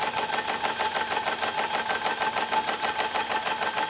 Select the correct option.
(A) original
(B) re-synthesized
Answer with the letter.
A